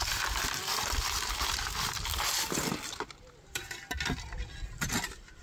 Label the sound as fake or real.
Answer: real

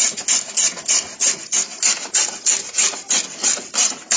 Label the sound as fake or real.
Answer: fake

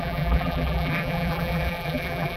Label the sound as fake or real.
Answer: fake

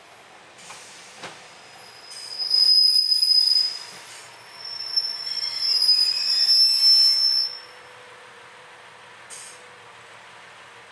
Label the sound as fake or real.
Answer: real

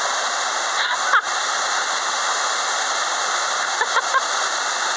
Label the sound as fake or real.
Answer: real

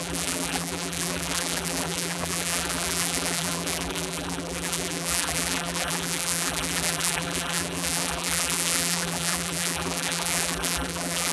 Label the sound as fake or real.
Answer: fake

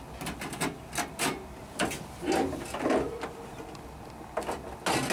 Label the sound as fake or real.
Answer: real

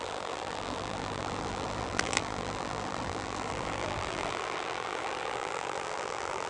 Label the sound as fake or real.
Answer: fake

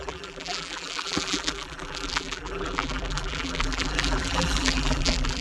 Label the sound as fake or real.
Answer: fake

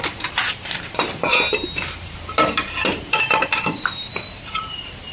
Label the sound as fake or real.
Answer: fake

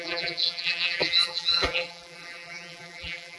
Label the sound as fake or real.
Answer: fake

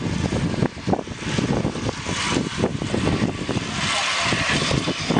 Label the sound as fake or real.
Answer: real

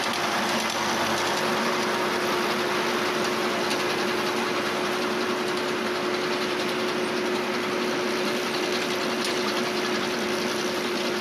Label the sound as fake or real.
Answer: real